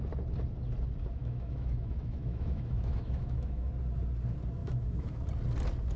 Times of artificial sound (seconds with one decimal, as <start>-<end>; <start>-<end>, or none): 1.2-3.7; 4.6-5.2